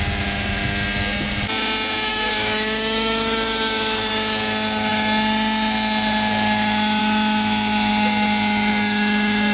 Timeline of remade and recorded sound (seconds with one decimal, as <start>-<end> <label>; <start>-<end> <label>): 0.0-2.1 recorded; 2.1-4.1 remade; 4.1-9.5 recorded